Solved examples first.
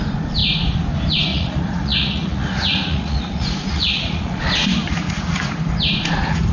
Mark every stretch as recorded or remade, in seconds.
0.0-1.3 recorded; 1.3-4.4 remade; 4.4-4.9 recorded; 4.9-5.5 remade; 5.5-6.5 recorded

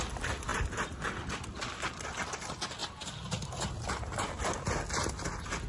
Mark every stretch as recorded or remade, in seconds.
0.0-5.7 recorded